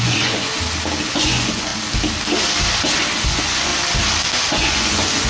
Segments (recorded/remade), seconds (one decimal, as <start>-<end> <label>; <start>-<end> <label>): 0.0-0.5 remade; 0.5-1.1 recorded; 1.1-1.7 remade; 1.7-3.2 recorded; 3.2-3.7 remade; 3.7-4.5 recorded; 4.5-5.3 remade